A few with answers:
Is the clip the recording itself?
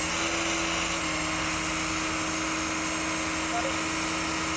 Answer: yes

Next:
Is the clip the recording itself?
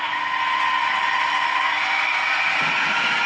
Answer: yes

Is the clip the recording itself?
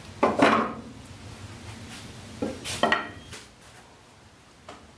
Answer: yes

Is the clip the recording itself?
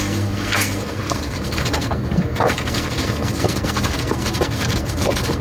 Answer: no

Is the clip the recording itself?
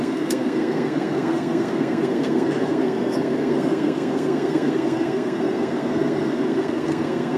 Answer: no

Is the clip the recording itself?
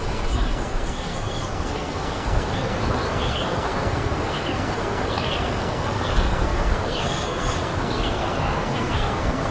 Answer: no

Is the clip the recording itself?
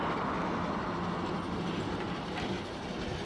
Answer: yes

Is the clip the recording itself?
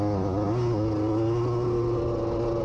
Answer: yes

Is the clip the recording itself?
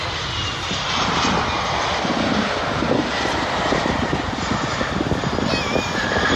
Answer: yes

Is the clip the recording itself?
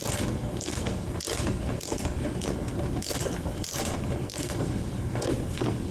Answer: no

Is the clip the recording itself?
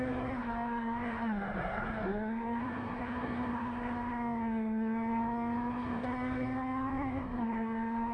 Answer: no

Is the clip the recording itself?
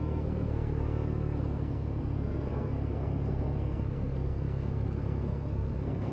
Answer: no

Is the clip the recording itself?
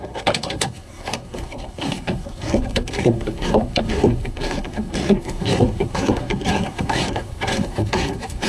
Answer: no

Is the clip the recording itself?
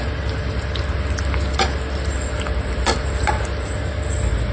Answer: yes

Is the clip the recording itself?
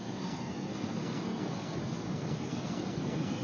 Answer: no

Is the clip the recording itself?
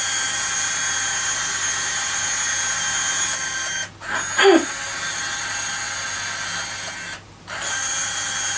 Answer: yes